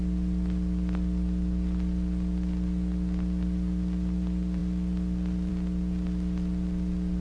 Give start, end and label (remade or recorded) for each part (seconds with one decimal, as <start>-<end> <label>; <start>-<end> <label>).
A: 0.0-7.2 recorded

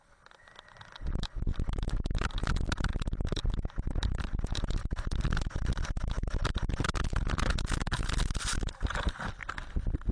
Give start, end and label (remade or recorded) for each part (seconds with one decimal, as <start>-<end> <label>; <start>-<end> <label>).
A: 0.0-10.1 recorded

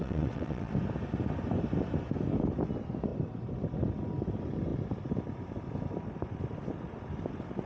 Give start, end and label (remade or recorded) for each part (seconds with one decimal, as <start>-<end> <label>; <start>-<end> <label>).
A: 0.0-0.7 remade; 0.7-7.7 recorded

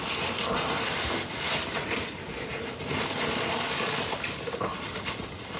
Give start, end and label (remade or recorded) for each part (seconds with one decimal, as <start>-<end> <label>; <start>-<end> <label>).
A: 0.0-5.6 recorded

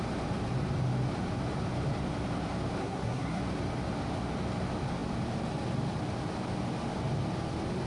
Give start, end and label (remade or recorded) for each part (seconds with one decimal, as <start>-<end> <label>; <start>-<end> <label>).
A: 0.0-2.8 recorded; 2.8-3.4 remade; 3.4-7.9 recorded

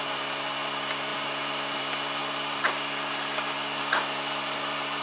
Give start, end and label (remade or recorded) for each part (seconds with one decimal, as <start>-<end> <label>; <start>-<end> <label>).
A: 0.0-5.0 recorded

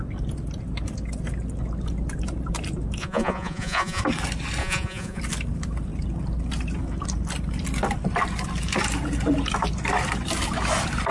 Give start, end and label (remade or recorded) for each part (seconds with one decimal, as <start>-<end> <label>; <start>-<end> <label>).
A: 0.0-3.0 recorded; 3.0-4.0 remade; 4.0-4.6 recorded; 4.6-5.2 remade; 5.2-11.1 recorded

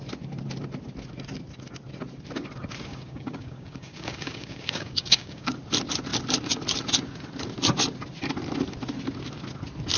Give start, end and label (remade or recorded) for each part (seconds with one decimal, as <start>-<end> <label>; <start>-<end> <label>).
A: 0.0-2.9 recorded; 2.9-5.5 remade; 5.5-10.0 recorded